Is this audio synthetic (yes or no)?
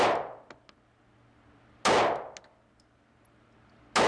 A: no